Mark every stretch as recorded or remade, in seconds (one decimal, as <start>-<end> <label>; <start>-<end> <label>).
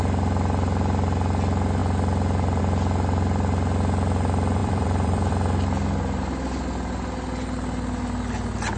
0.0-4.6 recorded; 4.6-5.3 remade; 5.3-8.8 recorded